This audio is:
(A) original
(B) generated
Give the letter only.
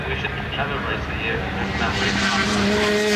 A